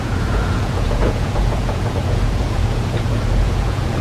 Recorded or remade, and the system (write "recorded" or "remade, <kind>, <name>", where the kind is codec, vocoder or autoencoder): remade, vocoder, Vocos